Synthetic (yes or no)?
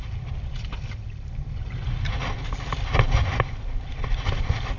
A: no